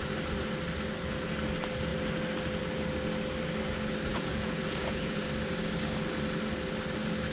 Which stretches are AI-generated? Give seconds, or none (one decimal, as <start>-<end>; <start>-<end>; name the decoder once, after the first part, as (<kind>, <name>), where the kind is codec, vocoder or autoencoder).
4.1-5.2 (vocoder, Vocos)